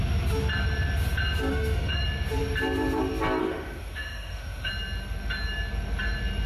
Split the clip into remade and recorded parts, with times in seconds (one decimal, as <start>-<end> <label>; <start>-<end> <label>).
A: 0.0-1.5 recorded; 1.5-2.0 remade; 2.0-3.4 recorded; 3.4-4.7 remade; 4.7-6.5 recorded